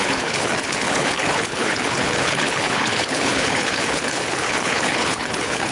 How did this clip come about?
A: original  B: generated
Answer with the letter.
B